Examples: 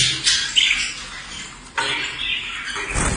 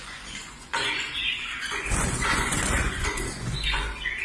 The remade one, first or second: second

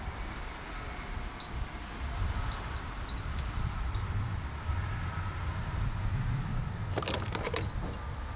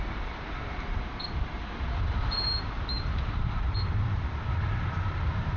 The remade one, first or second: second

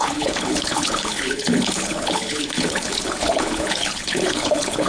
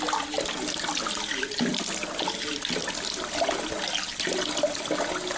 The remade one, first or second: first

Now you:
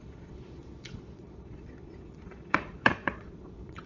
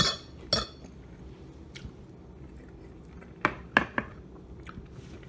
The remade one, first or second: first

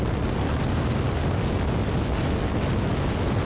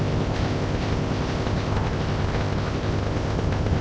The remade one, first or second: second